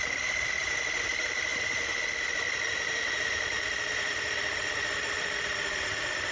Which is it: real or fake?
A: fake